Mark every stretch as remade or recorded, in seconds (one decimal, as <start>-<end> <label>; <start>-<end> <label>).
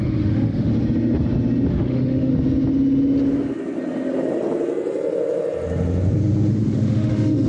0.0-0.7 remade; 0.7-1.7 recorded; 1.7-2.3 remade; 2.3-6.5 recorded; 6.5-7.5 remade